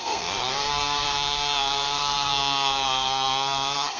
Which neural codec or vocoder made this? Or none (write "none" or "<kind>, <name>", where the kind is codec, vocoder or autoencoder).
codec, SNAC